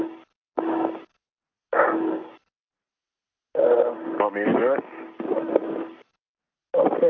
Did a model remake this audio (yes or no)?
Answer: no